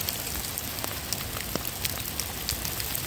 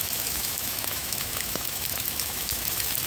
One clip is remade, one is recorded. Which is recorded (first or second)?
first